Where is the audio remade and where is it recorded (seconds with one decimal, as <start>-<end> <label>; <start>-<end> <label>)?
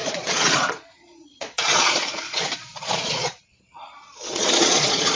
0.0-5.2 remade